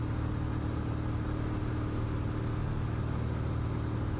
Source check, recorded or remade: recorded